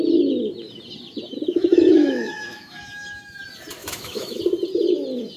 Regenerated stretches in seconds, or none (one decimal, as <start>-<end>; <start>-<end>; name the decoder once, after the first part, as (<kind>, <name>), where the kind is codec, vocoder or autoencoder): 1.5-3.4 (autoencoder, DAC-VAE); 3.8-4.4